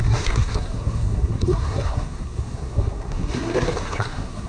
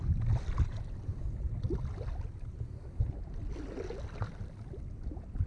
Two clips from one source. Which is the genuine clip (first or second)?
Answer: second